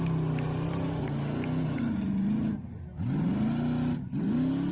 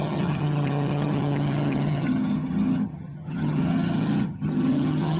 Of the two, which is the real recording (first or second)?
first